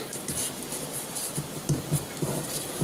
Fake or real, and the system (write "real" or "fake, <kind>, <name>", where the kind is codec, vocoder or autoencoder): real